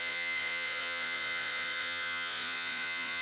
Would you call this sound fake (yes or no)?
yes